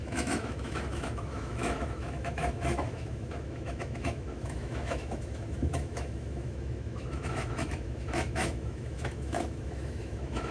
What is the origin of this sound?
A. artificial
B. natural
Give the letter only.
A